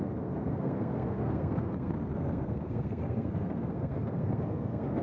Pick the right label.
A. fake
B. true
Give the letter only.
A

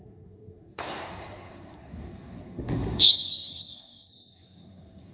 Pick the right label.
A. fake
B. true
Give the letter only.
A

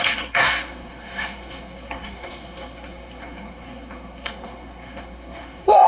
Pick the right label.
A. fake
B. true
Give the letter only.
A